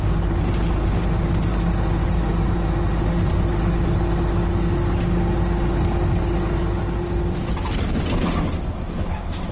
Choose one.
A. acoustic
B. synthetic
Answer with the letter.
A